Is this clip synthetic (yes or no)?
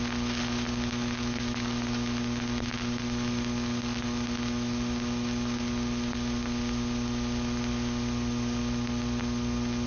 no